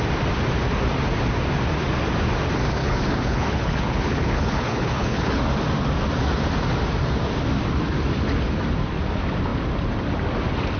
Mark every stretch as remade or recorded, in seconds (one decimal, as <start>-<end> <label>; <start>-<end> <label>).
0.0-2.8 recorded; 2.8-5.4 remade; 5.4-10.8 recorded